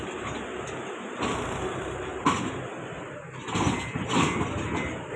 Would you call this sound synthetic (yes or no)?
no